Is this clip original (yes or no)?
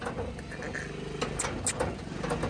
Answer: yes